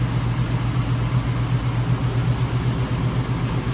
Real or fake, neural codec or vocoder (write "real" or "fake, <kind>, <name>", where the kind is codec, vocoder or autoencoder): real